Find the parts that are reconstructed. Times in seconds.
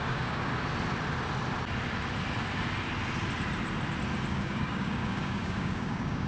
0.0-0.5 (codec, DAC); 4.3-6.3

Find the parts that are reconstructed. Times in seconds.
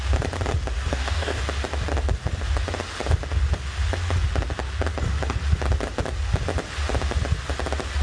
0.9-1.4 (codec, DAC)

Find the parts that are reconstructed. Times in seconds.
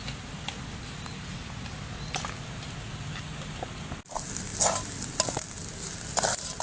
none